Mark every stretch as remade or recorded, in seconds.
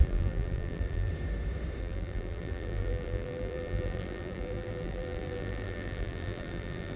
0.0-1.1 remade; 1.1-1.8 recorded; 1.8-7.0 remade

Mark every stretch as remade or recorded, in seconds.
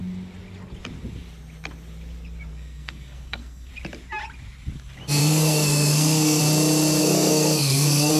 0.0-2.5 recorded; 2.5-3.7 remade; 3.7-5.2 recorded; 5.2-6.4 remade; 6.4-7.0 recorded; 7.0-8.2 remade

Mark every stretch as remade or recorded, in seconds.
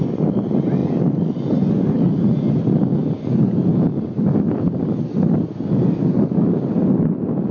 0.0-7.5 recorded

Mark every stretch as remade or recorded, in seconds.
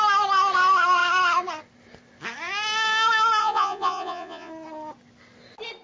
0.0-3.4 recorded; 3.4-4.5 remade; 4.5-5.8 recorded